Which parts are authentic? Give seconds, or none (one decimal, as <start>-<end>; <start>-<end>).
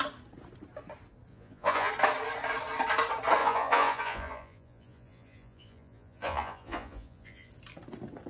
0.0-1.3; 1.9-3.4; 7.5-8.3